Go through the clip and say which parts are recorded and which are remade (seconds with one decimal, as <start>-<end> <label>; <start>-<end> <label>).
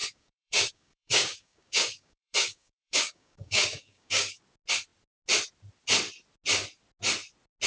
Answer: 0.0-4.4 remade; 4.4-7.7 recorded